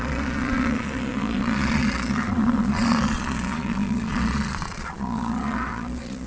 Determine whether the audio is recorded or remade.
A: remade